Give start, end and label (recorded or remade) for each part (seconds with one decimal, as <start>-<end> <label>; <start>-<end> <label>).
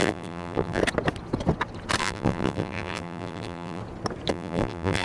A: 0.0-0.8 remade; 0.8-2.0 recorded; 2.0-3.8 remade; 3.8-4.3 recorded; 4.3-5.0 remade